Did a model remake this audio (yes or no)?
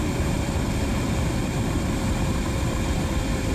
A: yes